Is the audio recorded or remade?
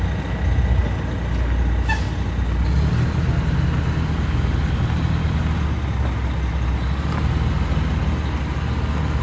recorded